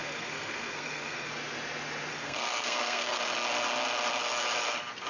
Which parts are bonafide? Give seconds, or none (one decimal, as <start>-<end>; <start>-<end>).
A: 1.3-2.1; 3.2-5.1